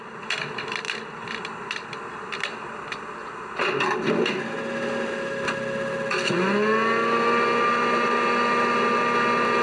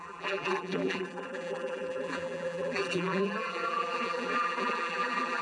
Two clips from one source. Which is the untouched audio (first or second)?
first